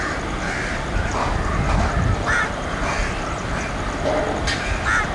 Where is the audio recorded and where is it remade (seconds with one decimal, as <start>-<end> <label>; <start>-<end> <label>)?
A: 0.0-1.1 recorded; 1.1-4.2 remade; 4.2-5.1 recorded